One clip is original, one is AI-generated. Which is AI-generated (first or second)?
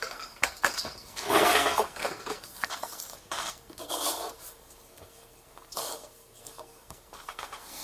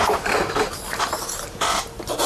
first